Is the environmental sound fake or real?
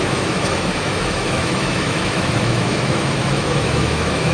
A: fake